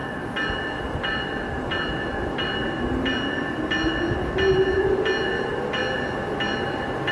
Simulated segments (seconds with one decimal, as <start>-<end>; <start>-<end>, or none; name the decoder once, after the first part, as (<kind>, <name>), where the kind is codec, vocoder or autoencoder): none